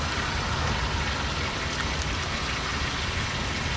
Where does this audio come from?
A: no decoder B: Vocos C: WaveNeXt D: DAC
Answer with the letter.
A